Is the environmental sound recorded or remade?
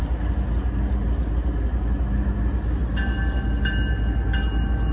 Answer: recorded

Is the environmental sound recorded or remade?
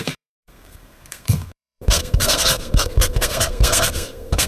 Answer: remade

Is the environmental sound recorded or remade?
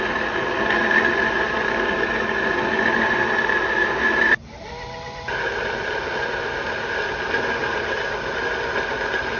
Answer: recorded